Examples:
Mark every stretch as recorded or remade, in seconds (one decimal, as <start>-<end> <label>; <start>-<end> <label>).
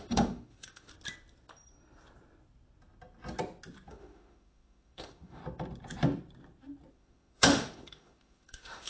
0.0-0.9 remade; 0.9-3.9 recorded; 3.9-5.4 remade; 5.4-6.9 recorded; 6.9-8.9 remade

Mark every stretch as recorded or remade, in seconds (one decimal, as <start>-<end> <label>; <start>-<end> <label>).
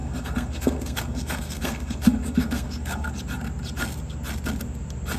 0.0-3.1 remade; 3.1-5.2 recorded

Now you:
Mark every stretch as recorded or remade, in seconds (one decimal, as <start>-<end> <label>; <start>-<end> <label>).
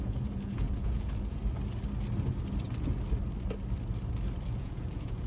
0.0-1.4 remade; 1.4-4.6 recorded; 4.6-5.3 remade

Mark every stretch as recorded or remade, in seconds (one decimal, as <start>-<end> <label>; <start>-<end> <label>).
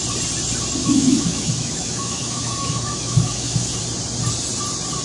0.0-0.8 recorded; 0.8-3.8 remade; 3.8-5.0 recorded